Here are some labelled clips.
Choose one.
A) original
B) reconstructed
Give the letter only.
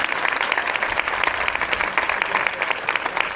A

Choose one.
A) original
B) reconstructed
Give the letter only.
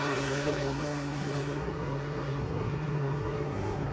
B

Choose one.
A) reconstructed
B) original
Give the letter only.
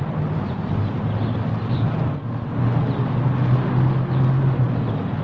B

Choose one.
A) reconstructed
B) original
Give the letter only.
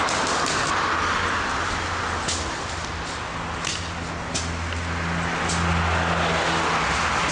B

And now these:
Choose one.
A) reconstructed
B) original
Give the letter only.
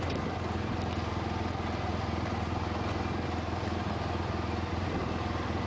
B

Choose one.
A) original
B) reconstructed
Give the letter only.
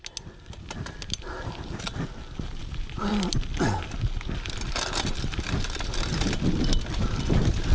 A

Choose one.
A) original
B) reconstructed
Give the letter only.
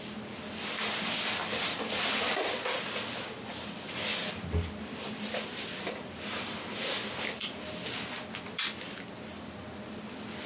A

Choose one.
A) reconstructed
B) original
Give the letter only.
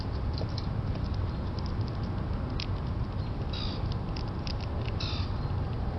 B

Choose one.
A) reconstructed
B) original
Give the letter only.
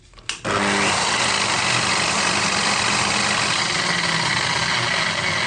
B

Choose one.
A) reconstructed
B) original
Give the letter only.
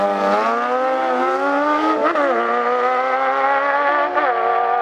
B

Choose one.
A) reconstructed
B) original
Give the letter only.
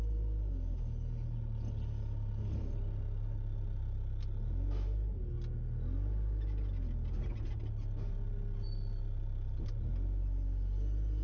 B